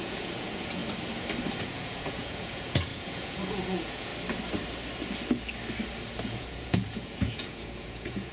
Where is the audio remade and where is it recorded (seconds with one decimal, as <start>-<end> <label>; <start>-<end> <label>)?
0.0-0.8 remade; 0.8-1.6 recorded; 1.6-4.1 remade; 4.1-6.2 recorded; 6.2-8.3 remade